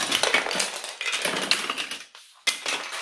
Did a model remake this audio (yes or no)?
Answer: no